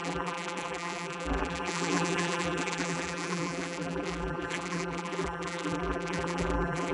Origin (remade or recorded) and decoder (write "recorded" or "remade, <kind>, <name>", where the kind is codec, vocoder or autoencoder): remade, vocoder, BigVGAN v2